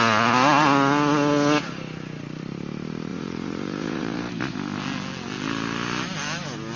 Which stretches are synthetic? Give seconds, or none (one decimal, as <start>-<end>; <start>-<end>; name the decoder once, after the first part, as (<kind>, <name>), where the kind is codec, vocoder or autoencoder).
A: 3.1-4.3 (vocoder, Vocos)